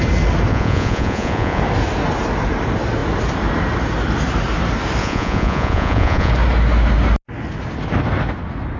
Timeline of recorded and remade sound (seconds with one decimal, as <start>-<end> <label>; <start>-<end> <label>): 0.0-0.5 recorded; 0.5-1.6 remade; 1.6-5.0 recorded; 5.0-6.3 remade; 6.3-8.8 recorded